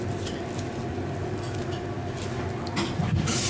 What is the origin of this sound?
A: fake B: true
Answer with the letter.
B